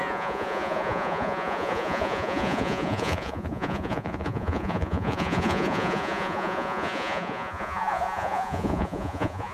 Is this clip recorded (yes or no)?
no